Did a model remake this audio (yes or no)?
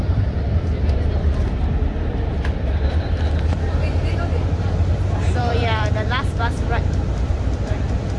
yes